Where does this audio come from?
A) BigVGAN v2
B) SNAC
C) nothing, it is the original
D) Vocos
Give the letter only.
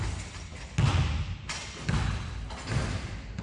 C